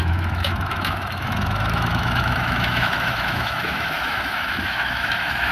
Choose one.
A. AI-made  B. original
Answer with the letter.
A